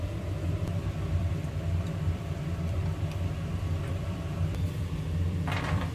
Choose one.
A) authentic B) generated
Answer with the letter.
B